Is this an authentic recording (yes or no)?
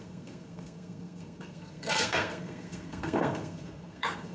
no